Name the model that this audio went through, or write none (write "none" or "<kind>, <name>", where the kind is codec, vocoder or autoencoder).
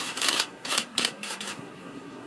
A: codec, SNAC